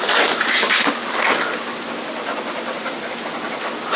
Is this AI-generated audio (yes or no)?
no